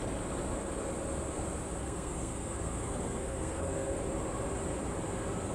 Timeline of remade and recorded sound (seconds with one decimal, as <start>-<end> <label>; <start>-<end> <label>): 0.0-1.8 recorded; 1.8-4.0 remade; 4.0-5.5 recorded

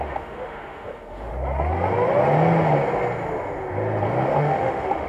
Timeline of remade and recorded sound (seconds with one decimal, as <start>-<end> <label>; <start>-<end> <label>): 0.0-1.3 remade; 1.3-4.4 recorded; 4.4-5.1 remade

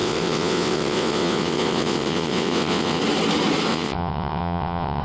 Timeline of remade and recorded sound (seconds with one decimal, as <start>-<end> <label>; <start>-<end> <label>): 0.0-3.0 remade; 3.0-3.7 recorded; 3.7-5.0 remade

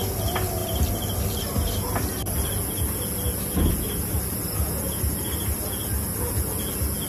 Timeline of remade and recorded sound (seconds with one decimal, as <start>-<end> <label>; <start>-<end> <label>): 0.0-7.1 recorded

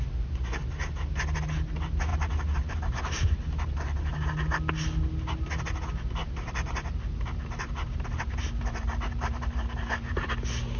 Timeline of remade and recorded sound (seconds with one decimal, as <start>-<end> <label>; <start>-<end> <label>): 0.0-2.1 recorded; 2.1-4.2 remade; 4.2-6.2 recorded; 6.2-10.3 remade; 10.3-10.8 recorded

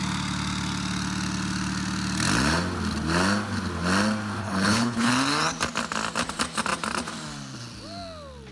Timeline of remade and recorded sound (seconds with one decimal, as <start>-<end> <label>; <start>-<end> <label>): 0.0-4.4 recorded; 4.4-5.1 remade; 5.1-8.5 recorded

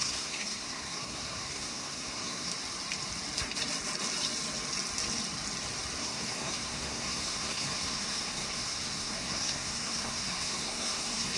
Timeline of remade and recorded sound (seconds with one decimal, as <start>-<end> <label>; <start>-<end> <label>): 0.0-2.5 remade; 2.5-6.0 recorded; 6.0-11.4 remade